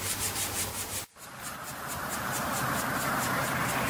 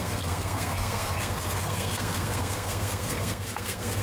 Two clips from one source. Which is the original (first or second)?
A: first